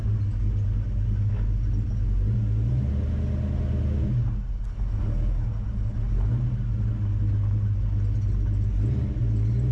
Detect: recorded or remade recorded